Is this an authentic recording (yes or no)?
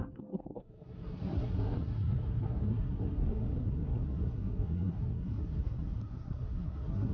no